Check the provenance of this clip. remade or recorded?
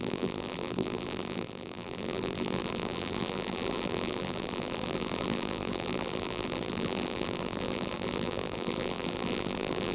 remade